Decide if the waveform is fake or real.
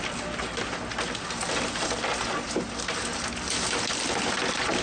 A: real